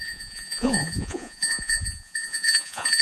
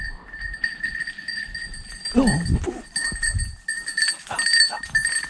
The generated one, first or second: first